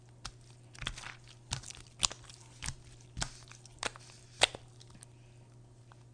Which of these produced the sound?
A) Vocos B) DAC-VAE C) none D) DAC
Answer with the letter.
C